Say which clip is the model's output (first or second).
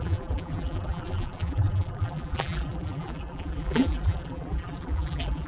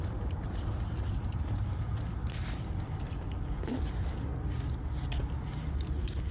first